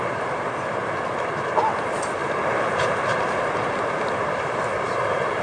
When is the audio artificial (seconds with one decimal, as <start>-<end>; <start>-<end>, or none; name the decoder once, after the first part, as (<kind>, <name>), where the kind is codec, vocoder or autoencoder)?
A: 2.2-5.4 (vocoder, BigVGAN v2)